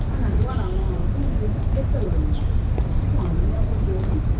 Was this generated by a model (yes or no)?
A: no